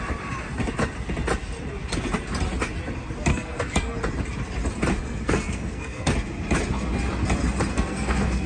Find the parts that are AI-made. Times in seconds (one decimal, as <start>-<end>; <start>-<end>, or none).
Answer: 3.3-4.0; 5.0-6.1; 7.7-8.5